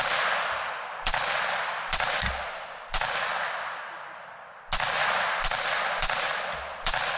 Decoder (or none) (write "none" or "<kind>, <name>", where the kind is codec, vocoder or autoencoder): none